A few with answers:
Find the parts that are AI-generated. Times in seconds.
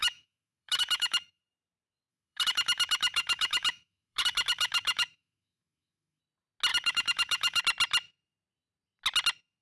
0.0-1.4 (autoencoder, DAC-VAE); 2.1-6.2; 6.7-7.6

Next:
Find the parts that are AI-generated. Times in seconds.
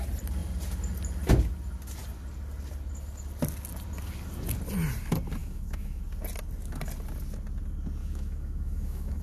5.4-6.0 (autoencoder, DAC-VAE); 8.0-9.2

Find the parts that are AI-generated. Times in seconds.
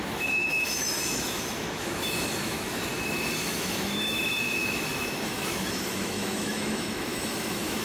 0.0-7.8 (autoencoder, DAC-VAE)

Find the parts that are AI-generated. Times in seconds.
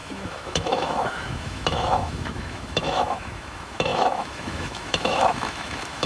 0.0-6.1 (autoencoder, DAC-VAE)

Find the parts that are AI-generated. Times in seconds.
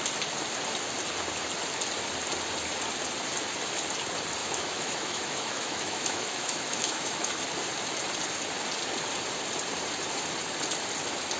4.4-7.3 (autoencoder, DAC-VAE)